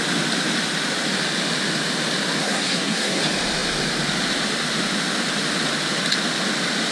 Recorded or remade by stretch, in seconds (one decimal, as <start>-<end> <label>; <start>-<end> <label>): 0.0-2.4 recorded; 2.4-3.2 remade; 3.2-6.9 recorded